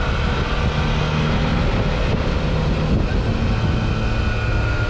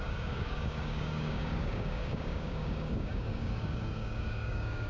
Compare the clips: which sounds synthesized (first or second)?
second